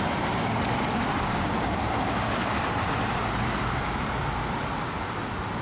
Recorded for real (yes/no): no